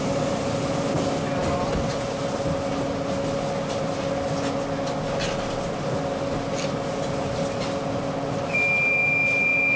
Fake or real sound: real